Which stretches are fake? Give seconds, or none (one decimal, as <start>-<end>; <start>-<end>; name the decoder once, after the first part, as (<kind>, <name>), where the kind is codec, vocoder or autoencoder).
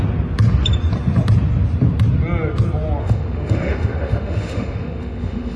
3.0-5.6 (autoencoder, DAC-VAE)